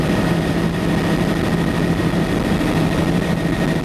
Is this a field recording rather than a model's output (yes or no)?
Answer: no